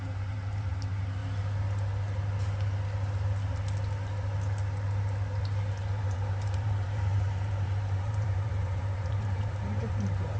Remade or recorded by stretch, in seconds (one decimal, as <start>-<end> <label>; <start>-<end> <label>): 0.0-1.2 remade; 1.2-6.0 recorded; 6.0-10.4 remade